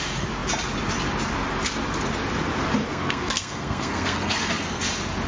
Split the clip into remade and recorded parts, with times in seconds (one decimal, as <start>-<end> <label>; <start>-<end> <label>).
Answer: 0.0-2.9 recorded; 2.9-4.8 remade; 4.8-5.3 recorded